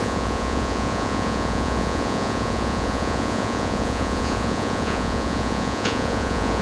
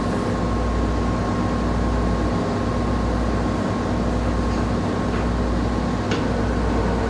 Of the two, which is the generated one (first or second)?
first